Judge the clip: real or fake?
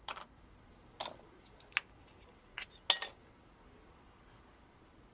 real